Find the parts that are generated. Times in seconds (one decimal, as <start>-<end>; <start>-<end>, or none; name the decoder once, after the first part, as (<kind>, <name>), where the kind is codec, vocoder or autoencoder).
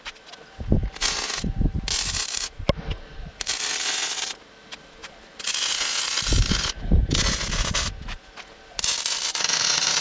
none